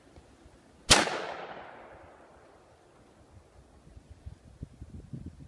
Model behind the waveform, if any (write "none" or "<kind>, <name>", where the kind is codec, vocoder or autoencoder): none